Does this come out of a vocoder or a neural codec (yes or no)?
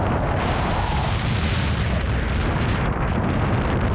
no